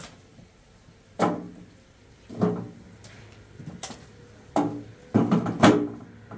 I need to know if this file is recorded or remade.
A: recorded